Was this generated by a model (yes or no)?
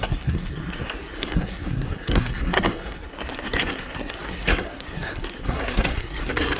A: yes